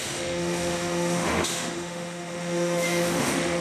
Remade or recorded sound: remade